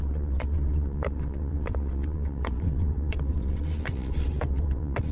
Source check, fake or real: fake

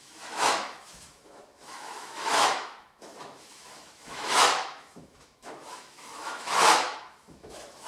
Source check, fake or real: fake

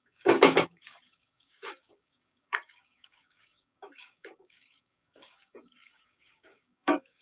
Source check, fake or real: fake